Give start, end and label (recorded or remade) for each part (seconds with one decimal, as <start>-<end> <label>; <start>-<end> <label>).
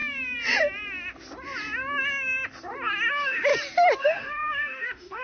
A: 0.0-3.1 recorded; 3.1-3.5 remade; 3.5-4.0 recorded; 4.0-5.2 remade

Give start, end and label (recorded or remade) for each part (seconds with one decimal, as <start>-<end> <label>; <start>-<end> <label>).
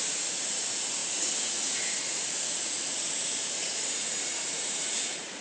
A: 0.0-5.4 remade